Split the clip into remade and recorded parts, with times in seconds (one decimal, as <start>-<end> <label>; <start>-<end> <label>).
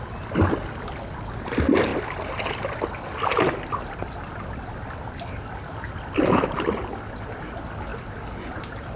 0.0-9.0 recorded